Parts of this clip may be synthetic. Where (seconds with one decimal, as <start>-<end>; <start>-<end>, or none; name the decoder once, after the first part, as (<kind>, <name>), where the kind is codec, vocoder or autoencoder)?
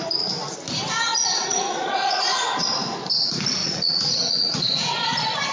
1.1-2.6 (vocoder, Vocos); 3.6-4.9